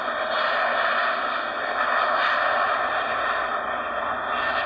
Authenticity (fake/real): real